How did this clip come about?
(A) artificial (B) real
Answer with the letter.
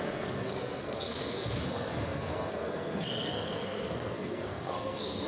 A